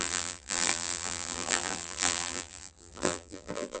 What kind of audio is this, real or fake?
fake